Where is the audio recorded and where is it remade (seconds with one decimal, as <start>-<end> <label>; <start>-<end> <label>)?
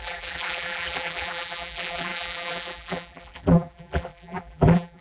0.0-5.0 remade